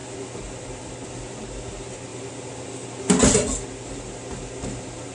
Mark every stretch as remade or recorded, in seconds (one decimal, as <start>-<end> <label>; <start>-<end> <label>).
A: 0.0-5.1 recorded